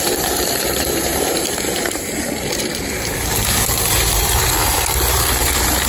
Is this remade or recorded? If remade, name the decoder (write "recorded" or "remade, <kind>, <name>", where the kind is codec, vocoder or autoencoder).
remade, vocoder, BigVGAN v2